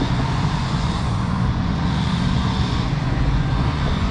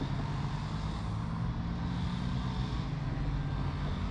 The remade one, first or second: first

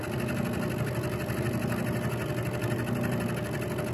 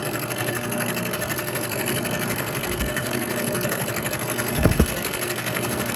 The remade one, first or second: second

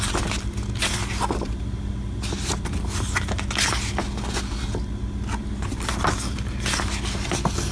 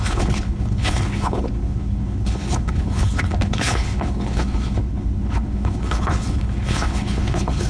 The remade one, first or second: second